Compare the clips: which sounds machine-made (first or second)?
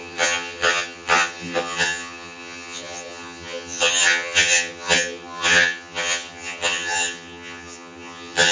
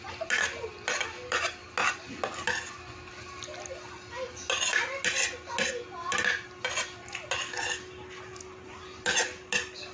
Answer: first